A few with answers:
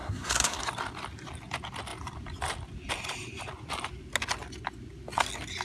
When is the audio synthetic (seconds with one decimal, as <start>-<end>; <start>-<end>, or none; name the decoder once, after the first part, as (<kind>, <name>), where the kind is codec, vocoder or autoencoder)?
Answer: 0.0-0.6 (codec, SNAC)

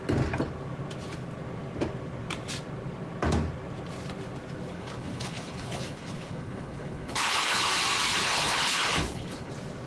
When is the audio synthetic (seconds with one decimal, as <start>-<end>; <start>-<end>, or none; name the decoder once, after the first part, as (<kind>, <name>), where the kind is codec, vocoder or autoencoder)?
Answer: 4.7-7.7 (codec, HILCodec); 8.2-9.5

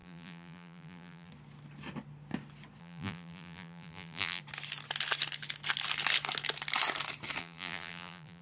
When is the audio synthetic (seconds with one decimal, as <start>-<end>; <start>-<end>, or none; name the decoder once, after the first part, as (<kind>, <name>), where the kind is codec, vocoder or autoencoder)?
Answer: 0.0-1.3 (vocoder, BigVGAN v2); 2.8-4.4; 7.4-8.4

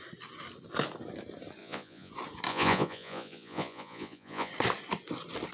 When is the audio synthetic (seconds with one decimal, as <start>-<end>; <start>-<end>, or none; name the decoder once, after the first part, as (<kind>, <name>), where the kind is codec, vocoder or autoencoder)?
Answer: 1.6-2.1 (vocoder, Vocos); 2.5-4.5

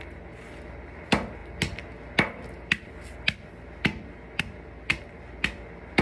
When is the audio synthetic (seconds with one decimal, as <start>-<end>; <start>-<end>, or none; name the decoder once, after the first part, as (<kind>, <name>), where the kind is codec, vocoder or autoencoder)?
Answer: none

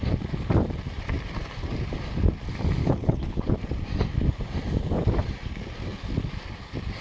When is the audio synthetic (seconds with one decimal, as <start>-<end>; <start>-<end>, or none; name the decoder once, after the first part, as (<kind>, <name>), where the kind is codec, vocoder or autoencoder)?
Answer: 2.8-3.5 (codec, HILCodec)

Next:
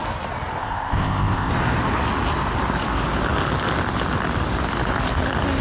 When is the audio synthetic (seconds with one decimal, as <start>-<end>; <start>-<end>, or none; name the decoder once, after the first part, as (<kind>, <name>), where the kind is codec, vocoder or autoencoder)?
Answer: 0.6-1.5 (codec, ZipCodec)